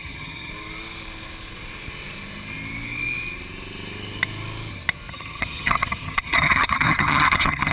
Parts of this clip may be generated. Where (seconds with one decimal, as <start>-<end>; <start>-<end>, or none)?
0.0-0.5; 5.1-7.7